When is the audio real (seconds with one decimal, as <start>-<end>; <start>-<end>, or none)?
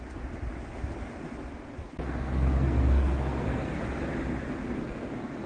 0.0-1.7; 3.8-4.6